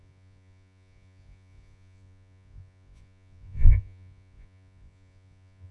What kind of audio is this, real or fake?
fake